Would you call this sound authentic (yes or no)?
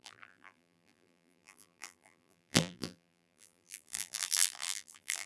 no